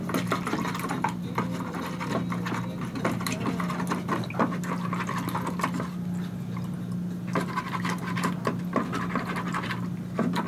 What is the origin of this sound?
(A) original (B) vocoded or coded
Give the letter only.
A